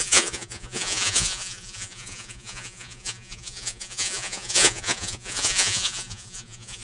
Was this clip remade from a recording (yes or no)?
yes